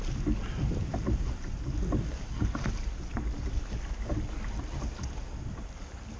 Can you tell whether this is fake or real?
real